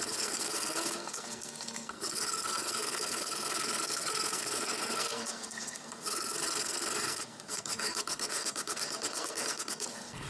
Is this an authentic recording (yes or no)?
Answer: no